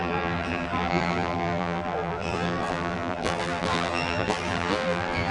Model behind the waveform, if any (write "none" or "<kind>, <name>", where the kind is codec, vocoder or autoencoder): vocoder, BigVGAN v2